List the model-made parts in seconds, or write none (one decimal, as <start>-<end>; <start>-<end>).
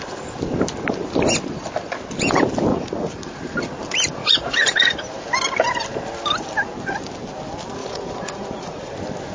2.7-3.4; 4.2-5.0; 7.8-8.9